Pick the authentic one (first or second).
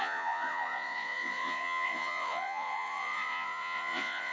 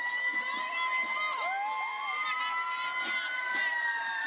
second